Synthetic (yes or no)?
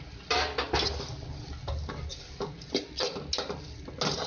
no